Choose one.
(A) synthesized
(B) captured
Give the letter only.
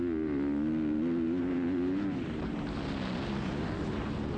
B